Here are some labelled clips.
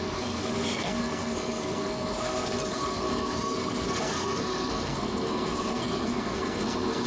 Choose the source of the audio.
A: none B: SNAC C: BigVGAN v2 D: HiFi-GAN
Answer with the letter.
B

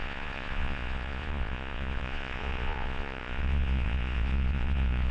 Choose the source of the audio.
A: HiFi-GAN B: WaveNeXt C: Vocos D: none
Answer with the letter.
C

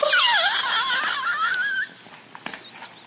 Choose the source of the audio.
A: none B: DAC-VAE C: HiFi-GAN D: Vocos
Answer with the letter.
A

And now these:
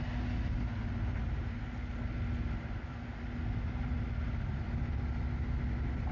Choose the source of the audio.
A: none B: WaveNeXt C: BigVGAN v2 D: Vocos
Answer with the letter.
A